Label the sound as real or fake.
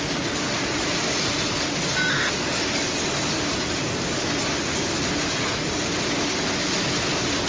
real